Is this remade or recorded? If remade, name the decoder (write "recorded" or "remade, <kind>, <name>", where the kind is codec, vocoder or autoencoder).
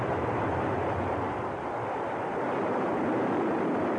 remade, vocoder, BigVGAN v2